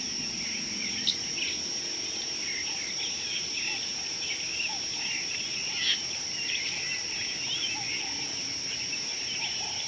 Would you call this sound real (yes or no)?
yes